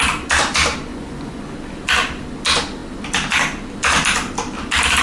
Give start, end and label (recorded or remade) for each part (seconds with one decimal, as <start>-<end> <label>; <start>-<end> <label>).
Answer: 0.0-0.9 recorded; 0.9-1.5 remade; 1.5-5.0 recorded